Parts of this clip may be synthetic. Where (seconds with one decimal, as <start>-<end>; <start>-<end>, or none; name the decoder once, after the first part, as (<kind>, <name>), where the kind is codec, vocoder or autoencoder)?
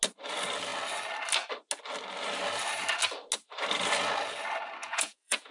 4.8-5.5 (vocoder, Vocos)